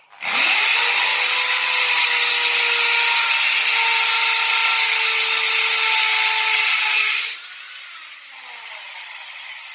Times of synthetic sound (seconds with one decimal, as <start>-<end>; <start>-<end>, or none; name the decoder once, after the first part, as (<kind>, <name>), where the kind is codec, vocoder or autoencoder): none